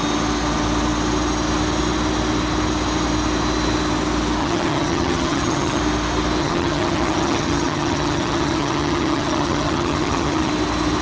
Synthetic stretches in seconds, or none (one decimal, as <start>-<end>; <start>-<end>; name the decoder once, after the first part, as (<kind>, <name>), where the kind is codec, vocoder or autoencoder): 4.4-5.8 (vocoder, HiFi-GAN); 6.4-10.5

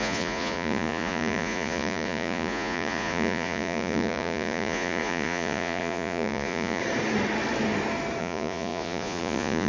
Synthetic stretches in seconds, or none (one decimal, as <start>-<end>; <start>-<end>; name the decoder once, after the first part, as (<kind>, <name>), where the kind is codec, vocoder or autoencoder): 0.0-6.8 (vocoder, Vocos); 8.2-9.7

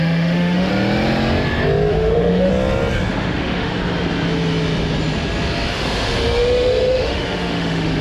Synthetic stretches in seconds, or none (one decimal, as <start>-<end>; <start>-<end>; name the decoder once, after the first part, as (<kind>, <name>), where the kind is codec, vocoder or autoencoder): 0.0-0.7 (autoencoder, DAC-VAE); 1.9-2.5; 3.1-3.7; 5.7-8.0

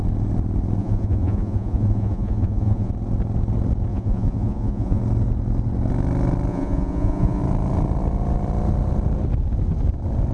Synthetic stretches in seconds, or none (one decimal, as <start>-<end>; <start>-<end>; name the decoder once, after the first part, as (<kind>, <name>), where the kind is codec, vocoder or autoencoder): 0.8-2.9 (vocoder, Vocos); 3.9-5.0; 6.5-7.4

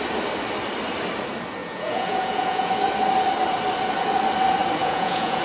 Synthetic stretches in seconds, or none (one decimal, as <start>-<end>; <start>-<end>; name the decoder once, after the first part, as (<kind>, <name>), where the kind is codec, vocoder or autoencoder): 1.6-2.7 (vocoder, Vocos); 4.8-5.4

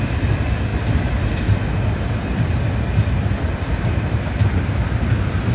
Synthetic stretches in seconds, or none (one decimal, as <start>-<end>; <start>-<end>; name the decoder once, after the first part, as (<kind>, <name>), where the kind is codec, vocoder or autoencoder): none

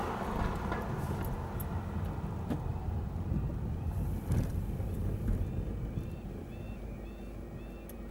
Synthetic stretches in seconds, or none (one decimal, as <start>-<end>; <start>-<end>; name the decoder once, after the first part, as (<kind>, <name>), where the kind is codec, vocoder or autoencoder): 2.7-4.5 (vocoder, BigVGAN v2)